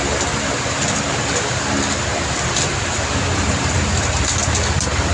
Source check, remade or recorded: remade